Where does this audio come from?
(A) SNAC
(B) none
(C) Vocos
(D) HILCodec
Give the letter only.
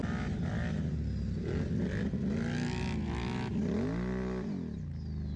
B